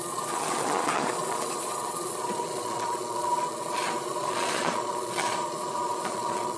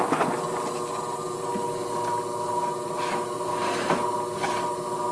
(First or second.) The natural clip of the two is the second